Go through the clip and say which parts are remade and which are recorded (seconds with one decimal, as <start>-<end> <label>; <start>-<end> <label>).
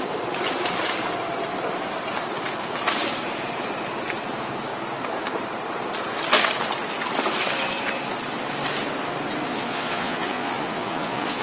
0.0-9.5 recorded; 9.5-11.4 remade